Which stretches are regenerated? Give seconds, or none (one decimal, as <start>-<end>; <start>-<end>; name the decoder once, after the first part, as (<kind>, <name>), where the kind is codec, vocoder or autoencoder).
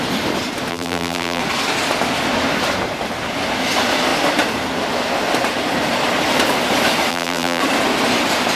0.7-1.4 (vocoder, BigVGAN v2); 7.1-7.6